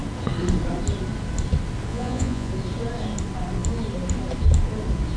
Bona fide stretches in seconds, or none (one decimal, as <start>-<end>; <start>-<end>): 0.0-1.9; 2.5-5.2